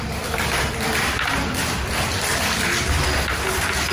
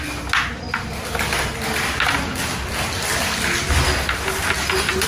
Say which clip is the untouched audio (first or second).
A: second